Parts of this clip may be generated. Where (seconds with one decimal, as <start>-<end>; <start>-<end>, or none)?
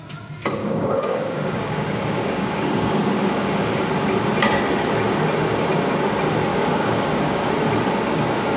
0.6-3.8; 6.5-7.5